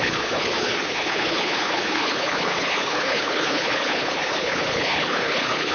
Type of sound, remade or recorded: remade